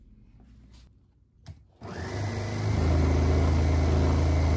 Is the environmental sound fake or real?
real